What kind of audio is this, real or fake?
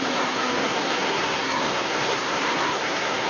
fake